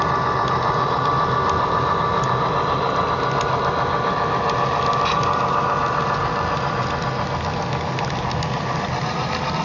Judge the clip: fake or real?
real